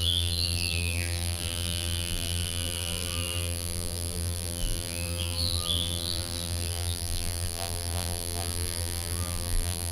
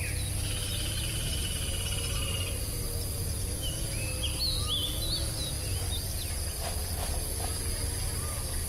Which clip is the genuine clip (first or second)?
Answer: second